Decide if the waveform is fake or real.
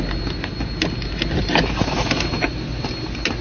real